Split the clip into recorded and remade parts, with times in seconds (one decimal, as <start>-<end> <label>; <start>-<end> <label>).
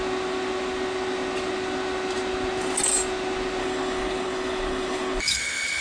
0.0-3.6 recorded; 3.6-5.8 remade